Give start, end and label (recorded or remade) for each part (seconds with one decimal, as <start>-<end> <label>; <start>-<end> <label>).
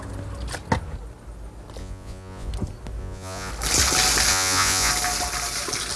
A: 0.0-1.8 recorded; 1.8-2.5 remade; 2.5-3.0 recorded; 3.0-3.5 remade; 3.5-4.3 recorded; 4.3-4.9 remade; 4.9-6.0 recorded